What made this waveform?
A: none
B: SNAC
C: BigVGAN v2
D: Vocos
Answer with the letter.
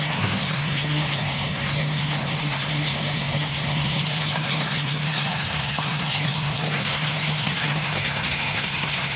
B